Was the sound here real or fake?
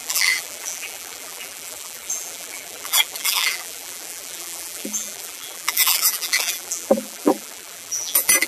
fake